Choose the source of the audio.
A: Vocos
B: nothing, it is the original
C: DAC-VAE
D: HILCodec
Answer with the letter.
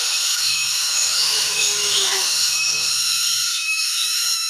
C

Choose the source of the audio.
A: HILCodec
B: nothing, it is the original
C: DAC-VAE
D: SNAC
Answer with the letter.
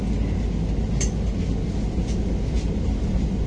B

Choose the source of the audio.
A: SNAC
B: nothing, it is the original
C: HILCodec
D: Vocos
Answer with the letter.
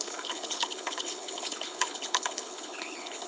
C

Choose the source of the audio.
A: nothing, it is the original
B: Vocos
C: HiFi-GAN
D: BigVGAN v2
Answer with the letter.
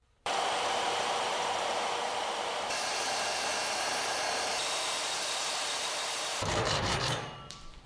D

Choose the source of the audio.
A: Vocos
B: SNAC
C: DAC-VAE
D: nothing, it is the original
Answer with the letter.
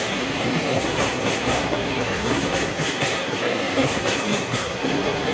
B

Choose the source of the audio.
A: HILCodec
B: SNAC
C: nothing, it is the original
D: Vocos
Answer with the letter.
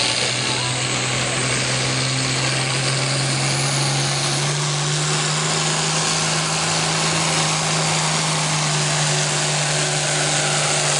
C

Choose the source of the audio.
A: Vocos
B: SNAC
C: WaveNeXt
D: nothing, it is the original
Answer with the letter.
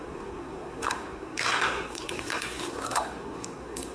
B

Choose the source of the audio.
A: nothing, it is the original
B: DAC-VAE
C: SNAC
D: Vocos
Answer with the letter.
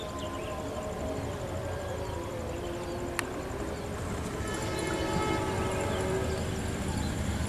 A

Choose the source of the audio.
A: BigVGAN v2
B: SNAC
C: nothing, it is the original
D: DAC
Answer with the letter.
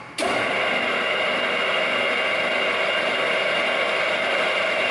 C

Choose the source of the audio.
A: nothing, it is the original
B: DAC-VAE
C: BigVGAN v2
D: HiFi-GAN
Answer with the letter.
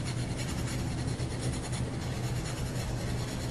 A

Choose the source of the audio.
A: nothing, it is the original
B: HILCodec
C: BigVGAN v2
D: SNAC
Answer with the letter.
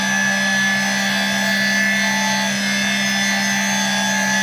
A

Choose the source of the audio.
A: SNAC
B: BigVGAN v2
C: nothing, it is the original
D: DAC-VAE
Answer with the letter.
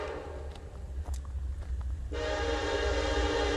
C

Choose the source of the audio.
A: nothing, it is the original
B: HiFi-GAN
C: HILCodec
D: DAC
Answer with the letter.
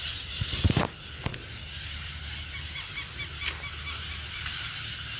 A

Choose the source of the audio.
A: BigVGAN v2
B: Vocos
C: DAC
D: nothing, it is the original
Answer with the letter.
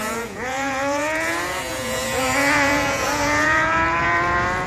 B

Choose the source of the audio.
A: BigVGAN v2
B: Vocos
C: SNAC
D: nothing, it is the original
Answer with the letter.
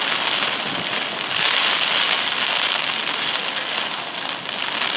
D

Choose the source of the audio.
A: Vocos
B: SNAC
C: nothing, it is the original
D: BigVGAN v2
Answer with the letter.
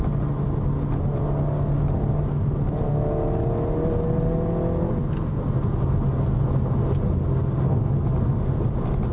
C